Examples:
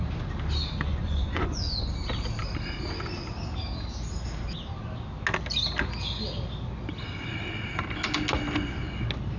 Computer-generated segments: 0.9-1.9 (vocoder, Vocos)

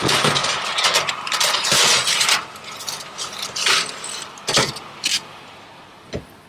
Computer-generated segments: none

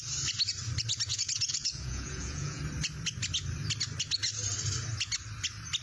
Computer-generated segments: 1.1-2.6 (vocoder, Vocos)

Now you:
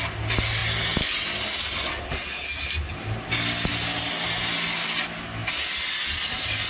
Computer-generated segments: none

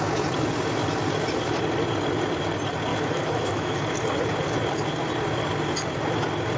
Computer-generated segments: 2.9-3.8 (autoencoder, DAC-VAE)

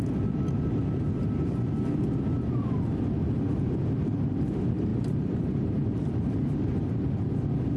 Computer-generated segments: 4.9-6.5 (vocoder, BigVGAN v2)